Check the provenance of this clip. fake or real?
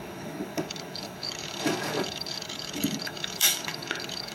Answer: fake